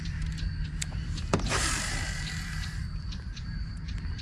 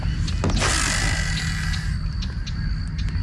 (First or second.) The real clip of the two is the second